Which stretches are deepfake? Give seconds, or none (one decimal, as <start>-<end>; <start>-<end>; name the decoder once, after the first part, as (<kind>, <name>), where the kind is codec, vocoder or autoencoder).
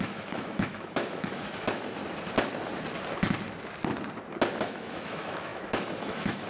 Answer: 0.0-2.0 (autoencoder, DAC-VAE); 4.6-6.5